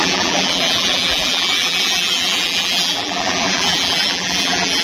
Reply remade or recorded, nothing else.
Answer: remade